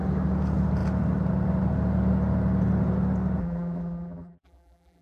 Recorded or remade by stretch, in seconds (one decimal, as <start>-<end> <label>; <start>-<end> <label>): 0.0-3.4 recorded; 3.4-5.0 remade